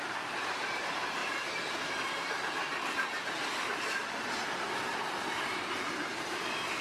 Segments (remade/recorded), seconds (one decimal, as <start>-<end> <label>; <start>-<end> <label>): 0.0-6.8 remade